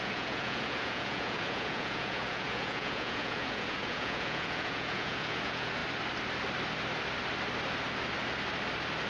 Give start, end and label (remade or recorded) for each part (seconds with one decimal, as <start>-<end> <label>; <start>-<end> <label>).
0.0-5.8 remade; 5.8-9.1 recorded